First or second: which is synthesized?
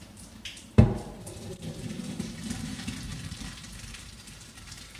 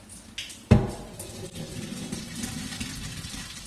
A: first